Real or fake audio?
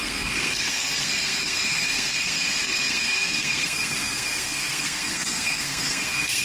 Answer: fake